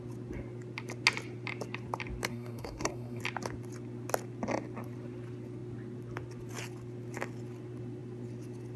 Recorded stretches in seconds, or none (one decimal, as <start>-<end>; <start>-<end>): 0.0-2.3; 3.2-8.8